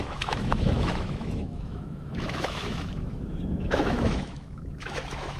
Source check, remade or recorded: remade